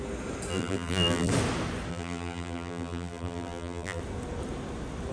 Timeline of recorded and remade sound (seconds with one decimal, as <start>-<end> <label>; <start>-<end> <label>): 0.0-0.5 recorded; 0.5-1.3 remade; 1.3-1.9 recorded; 1.9-4.0 remade; 4.0-5.1 recorded